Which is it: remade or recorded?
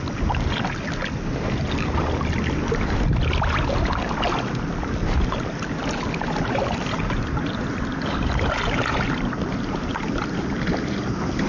recorded